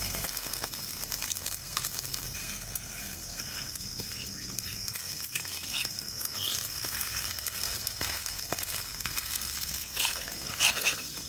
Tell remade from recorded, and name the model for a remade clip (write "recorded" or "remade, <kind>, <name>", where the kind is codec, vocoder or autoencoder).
remade, codec, SNAC